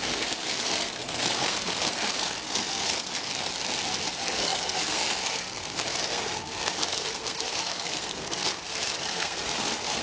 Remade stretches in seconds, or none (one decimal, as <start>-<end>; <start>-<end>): 0.0-3.5; 4.1-10.0